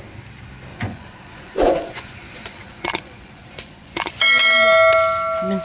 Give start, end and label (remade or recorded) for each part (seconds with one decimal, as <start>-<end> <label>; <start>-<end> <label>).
0.0-0.7 recorded; 0.7-4.1 remade; 4.1-5.6 recorded